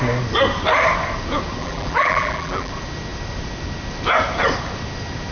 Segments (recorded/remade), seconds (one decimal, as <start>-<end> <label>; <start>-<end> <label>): 0.0-1.6 recorded; 1.6-2.7 remade; 2.7-5.3 recorded